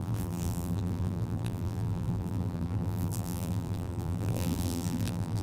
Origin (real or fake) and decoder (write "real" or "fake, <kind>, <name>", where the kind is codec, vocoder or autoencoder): fake, vocoder, BigVGAN v2